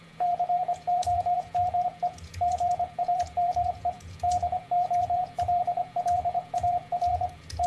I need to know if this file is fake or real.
fake